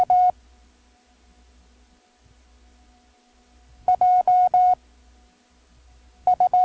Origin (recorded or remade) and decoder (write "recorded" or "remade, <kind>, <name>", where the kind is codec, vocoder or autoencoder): recorded